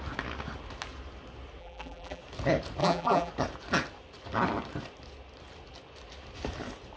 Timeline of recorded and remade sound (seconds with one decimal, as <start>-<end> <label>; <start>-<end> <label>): 0.0-1.6 recorded; 1.6-2.2 remade; 2.2-2.8 recorded; 2.8-3.3 remade; 3.3-7.0 recorded